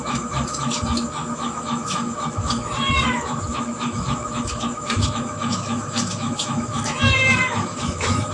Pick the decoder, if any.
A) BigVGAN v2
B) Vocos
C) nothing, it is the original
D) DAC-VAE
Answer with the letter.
D